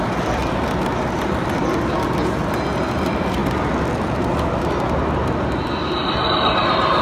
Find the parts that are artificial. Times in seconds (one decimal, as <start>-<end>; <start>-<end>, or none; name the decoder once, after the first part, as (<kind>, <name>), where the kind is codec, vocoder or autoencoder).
0.0-0.4 (vocoder, BigVGAN v2); 1.2-1.6; 3.0-3.4; 5.5-7.0